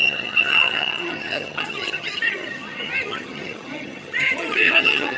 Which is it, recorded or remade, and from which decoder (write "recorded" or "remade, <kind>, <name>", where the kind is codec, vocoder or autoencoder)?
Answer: remade, vocoder, HiFi-GAN